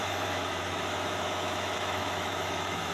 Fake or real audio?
fake